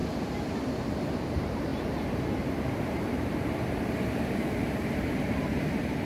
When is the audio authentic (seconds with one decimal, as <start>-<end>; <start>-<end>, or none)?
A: none